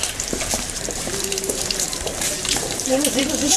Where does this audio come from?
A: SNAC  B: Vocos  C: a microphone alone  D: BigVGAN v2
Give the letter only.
D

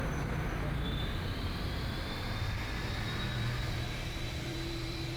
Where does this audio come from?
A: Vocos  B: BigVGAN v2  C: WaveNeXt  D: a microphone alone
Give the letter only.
B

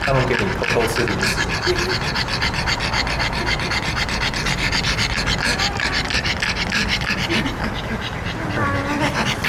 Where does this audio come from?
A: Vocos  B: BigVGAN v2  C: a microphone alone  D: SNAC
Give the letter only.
C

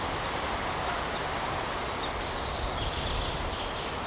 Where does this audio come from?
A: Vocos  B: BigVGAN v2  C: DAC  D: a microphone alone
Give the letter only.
D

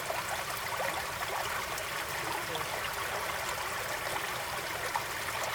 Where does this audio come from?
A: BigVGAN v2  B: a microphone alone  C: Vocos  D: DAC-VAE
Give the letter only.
B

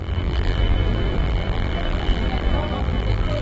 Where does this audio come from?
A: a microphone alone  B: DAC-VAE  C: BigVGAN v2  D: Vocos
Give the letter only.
C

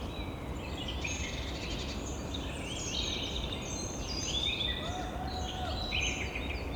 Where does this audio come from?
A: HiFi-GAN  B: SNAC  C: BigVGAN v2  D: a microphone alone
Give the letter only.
D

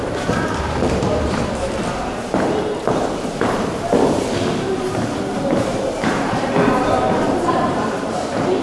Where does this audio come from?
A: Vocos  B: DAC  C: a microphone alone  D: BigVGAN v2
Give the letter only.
D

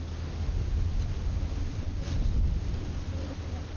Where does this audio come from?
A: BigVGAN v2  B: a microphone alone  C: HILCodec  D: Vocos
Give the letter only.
B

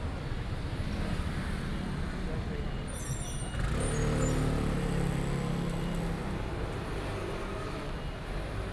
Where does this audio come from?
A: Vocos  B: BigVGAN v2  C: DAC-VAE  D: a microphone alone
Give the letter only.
D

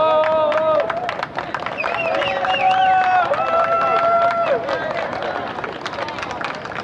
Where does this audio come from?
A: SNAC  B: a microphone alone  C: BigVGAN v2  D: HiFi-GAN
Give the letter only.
B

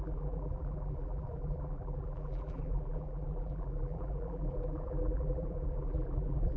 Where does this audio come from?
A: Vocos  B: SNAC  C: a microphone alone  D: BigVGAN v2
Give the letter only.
D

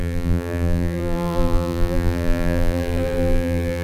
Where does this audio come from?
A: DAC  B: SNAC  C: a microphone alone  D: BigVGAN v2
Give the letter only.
D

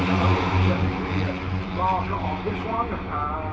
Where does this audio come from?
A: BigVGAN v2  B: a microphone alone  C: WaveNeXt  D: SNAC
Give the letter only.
A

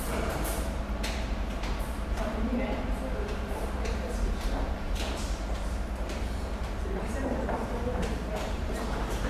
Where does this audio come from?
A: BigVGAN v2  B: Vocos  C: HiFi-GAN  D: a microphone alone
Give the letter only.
A